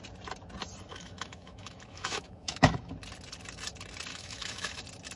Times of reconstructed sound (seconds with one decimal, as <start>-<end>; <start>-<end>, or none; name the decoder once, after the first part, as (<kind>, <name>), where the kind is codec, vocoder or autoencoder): 0.9-2.9 (autoencoder, DAC-VAE); 4.1-4.8